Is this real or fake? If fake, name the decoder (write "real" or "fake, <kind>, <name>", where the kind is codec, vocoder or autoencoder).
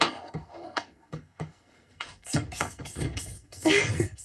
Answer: fake, codec, SNAC